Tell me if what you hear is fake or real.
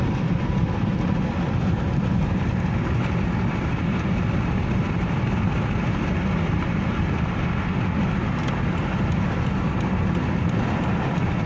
real